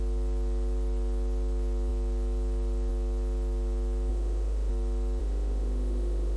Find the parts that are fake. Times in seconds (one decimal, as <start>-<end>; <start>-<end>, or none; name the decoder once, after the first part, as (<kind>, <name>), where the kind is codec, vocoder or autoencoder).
4.1-4.7 (autoencoder, DAC-VAE); 5.2-6.4